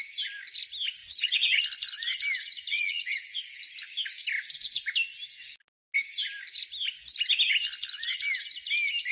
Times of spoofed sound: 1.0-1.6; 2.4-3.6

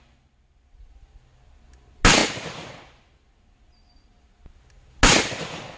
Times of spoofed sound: none